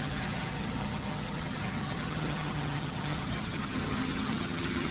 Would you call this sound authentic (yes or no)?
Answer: no